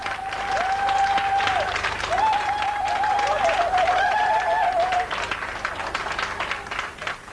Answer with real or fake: real